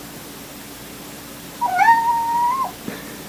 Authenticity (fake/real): real